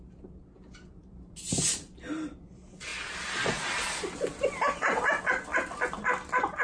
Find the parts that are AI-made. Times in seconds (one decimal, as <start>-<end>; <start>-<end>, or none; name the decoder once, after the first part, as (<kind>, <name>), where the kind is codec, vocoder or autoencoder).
none